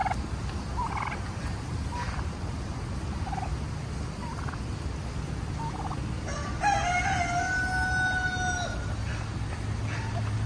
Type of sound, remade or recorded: recorded